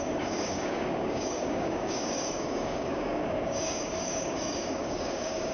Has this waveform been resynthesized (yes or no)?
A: yes